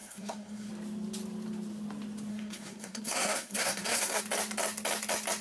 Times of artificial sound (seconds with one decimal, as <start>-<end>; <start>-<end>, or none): 0.0-0.7; 2.3-4.2